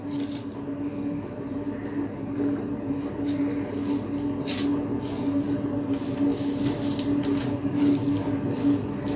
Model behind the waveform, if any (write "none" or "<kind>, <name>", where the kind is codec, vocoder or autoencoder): none